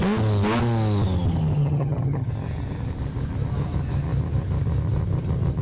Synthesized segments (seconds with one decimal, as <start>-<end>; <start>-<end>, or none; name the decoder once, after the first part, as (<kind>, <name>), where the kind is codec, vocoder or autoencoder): 1.6-2.3 (vocoder, HiFi-GAN)

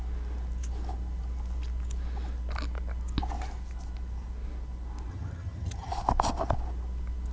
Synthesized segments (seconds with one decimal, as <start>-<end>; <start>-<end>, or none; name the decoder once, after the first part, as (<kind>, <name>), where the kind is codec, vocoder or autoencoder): 5.1-5.9 (vocoder, HiFi-GAN)

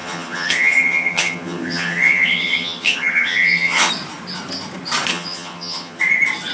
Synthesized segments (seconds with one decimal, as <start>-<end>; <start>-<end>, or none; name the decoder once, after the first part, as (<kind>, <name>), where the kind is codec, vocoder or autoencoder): 0.0-3.9 (vocoder, HiFi-GAN); 5.1-6.0